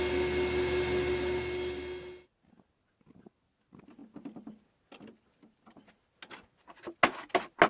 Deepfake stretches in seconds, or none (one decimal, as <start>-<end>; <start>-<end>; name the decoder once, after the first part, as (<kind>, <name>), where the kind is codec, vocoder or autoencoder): none